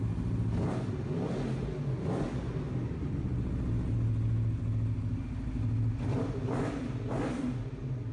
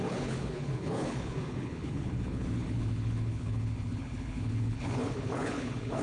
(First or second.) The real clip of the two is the first